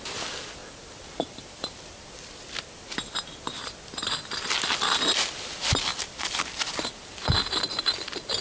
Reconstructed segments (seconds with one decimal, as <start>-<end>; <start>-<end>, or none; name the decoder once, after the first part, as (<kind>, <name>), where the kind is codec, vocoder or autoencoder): 0.6-4.2 (vocoder, BigVGAN v2); 5.9-7.0